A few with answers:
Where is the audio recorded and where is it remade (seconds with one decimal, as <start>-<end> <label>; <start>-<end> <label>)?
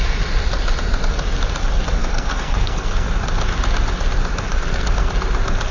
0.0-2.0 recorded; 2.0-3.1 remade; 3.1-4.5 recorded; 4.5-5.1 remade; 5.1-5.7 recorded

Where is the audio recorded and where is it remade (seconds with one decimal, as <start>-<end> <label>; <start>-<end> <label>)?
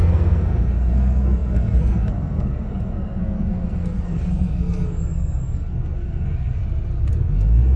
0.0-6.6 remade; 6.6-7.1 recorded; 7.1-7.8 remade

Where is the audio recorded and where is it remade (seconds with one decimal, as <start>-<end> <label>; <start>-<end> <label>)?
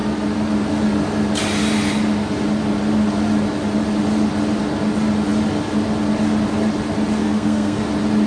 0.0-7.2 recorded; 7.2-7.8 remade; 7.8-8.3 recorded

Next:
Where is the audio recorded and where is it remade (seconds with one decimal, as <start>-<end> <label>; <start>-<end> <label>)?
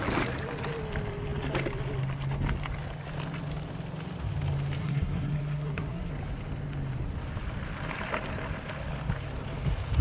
0.0-4.8 recorded; 4.8-6.1 remade; 6.1-10.0 recorded